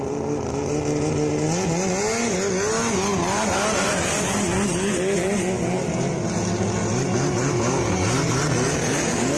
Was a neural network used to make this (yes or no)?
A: no